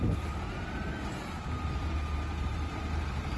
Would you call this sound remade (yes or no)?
no